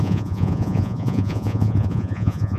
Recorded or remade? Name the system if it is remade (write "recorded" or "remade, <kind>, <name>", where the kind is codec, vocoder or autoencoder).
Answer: remade, vocoder, Vocos